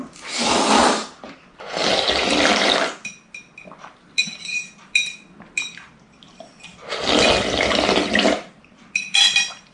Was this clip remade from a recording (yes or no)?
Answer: no